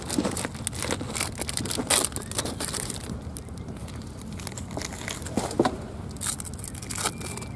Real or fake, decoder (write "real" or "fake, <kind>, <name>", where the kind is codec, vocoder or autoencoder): real